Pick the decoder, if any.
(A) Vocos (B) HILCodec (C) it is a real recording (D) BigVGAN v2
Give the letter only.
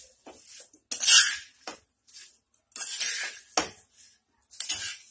C